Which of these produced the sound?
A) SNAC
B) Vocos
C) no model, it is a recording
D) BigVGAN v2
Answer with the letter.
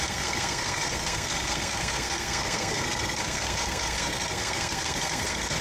A